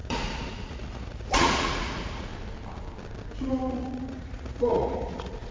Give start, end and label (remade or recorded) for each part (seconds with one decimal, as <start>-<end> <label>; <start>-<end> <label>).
0.0-2.3 remade; 2.3-3.5 recorded; 3.5-5.5 remade